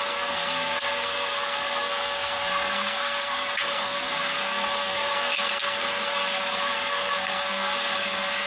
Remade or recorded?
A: remade